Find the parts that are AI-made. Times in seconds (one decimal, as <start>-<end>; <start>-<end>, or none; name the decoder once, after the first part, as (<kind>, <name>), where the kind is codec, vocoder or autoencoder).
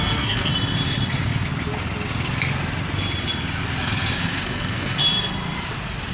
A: 0.0-0.5 (codec, SNAC); 4.2-5.0